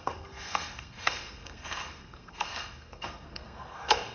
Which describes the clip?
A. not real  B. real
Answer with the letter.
A